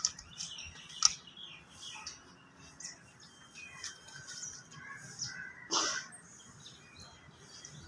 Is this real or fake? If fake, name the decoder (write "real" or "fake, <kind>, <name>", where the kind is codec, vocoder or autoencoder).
real